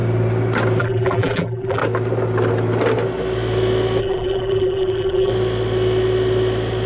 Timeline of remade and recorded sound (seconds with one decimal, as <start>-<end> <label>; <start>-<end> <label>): 0.0-0.8 recorded; 0.8-1.8 remade; 1.8-4.0 recorded; 4.0-5.3 remade; 5.3-6.9 recorded